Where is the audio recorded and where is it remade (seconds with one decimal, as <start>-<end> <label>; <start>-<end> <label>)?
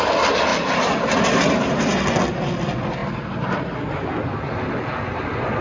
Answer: 0.0-0.5 recorded; 0.5-2.0 remade; 2.0-5.6 recorded